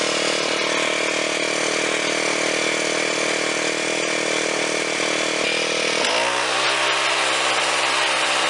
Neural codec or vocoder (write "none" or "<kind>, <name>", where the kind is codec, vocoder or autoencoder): none